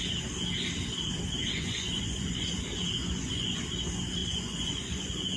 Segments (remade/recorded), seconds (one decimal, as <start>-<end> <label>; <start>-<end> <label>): 0.0-1.4 recorded; 1.4-2.5 remade; 2.5-3.0 recorded; 3.0-3.6 remade; 3.6-4.2 recorded; 4.2-5.4 remade